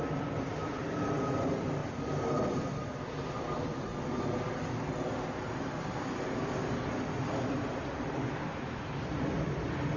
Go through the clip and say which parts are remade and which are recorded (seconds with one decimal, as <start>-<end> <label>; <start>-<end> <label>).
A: 0.0-1.8 remade; 1.8-3.0 recorded; 3.0-3.9 remade; 3.9-7.8 recorded; 7.8-10.0 remade